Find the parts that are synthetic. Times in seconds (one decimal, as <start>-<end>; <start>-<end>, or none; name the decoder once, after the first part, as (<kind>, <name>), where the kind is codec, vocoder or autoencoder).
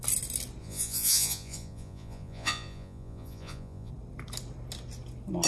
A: 0.6-3.9 (vocoder, Vocos)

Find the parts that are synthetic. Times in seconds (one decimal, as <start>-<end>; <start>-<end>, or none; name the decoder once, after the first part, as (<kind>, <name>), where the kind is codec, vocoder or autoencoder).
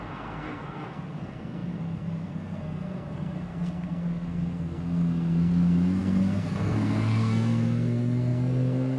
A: 0.0-9.0 (codec, SNAC)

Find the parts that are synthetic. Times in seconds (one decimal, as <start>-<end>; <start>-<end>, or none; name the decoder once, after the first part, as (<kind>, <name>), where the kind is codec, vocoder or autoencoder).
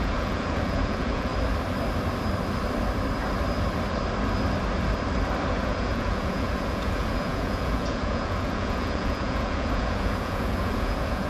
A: 0.0-1.3 (vocoder, Vocos); 5.5-11.3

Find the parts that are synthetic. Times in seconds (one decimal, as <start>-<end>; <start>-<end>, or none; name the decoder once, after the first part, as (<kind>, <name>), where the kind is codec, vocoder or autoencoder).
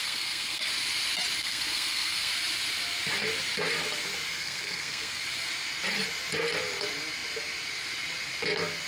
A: 0.0-0.7 (codec, SNAC); 1.4-2.3; 4.3-5.2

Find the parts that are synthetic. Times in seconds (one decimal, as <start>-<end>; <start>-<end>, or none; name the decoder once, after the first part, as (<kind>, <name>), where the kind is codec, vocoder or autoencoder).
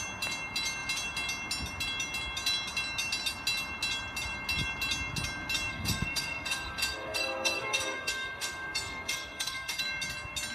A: 5.7-9.8 (codec, SNAC)